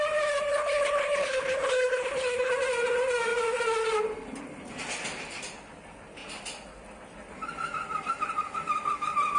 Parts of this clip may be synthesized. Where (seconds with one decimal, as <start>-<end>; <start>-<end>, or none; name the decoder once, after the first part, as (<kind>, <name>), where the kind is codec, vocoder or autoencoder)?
0.5-2.5 (codec, HILCodec)